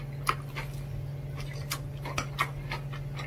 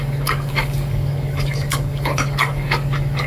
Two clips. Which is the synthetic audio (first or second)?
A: second